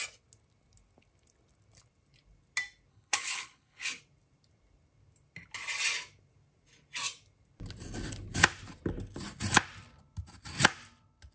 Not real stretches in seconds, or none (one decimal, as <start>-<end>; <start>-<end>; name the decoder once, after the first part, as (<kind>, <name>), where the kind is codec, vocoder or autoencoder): 2.9-4.0 (codec, HILCodec)